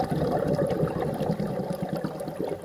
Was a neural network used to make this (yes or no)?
no